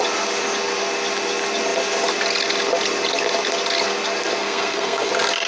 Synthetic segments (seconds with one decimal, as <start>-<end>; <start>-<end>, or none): 4.4-5.1